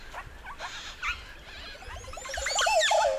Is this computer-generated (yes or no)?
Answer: no